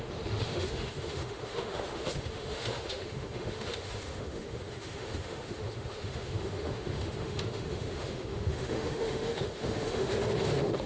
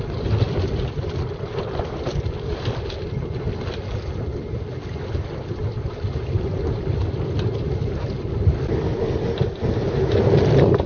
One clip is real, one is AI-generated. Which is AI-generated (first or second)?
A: first